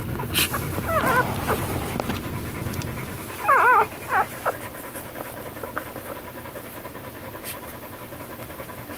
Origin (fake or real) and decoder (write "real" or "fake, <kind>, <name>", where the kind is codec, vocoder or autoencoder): real